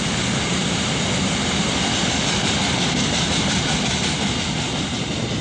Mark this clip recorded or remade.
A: recorded